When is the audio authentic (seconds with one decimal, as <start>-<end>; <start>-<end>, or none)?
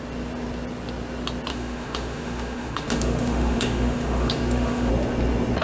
0.0-1.5; 4.9-5.6